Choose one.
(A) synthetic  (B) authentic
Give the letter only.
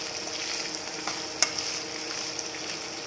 B